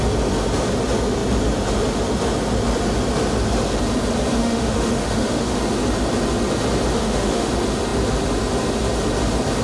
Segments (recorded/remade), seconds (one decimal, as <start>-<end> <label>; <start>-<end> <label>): 0.0-4.4 recorded; 4.4-5.6 remade; 5.6-6.9 recorded; 6.9-7.5 remade; 7.5-9.6 recorded